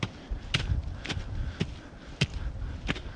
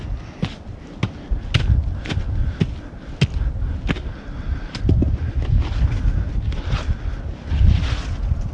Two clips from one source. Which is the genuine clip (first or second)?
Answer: second